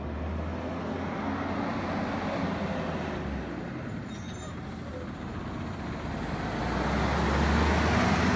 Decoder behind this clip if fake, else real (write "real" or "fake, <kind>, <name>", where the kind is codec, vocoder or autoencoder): real